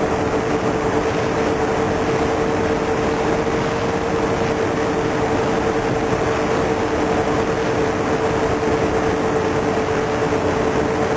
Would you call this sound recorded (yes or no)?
yes